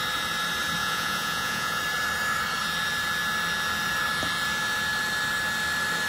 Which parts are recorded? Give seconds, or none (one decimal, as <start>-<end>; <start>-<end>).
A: 0.0-0.8; 1.8-6.1